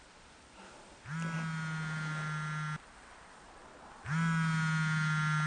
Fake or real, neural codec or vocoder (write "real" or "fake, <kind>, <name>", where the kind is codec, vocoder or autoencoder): real